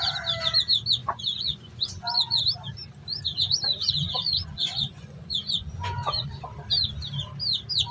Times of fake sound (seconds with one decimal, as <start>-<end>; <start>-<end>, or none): 1.0-2.4; 3.3-6.4